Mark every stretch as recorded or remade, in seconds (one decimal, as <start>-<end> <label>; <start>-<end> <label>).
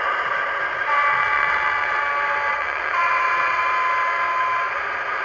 0.0-0.9 recorded; 0.9-2.0 remade; 2.0-2.5 recorded; 2.5-3.6 remade; 3.6-5.2 recorded